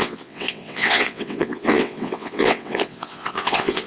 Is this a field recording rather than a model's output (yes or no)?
no